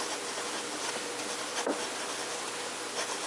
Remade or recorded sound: recorded